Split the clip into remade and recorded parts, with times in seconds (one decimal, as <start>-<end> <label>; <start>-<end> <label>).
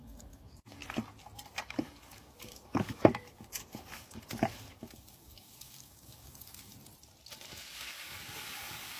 0.0-0.8 remade; 0.8-1.6 recorded; 1.6-6.7 remade; 6.7-7.3 recorded; 7.3-9.0 remade